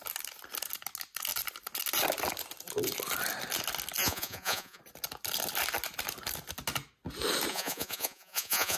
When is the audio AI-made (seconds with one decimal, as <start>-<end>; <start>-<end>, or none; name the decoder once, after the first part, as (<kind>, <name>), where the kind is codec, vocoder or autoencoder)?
4.0-4.8 (vocoder, Vocos); 7.5-8.8